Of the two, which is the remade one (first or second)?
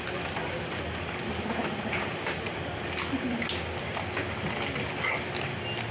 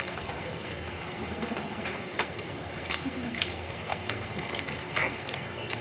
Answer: second